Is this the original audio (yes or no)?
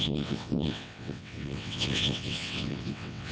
no